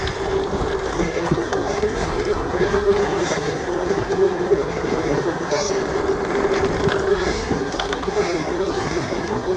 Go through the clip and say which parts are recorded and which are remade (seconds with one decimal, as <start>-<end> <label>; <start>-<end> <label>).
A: 0.0-0.9 recorded; 0.9-5.7 remade; 5.7-7.1 recorded; 7.1-9.6 remade